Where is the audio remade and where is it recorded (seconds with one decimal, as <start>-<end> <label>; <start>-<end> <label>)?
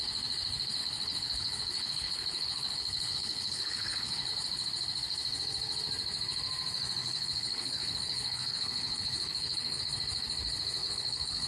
0.0-0.8 recorded; 0.8-4.3 remade; 4.3-7.0 recorded; 7.0-9.8 remade; 9.8-10.8 recorded; 10.8-11.5 remade